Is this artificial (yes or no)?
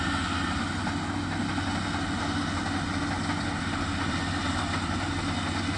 no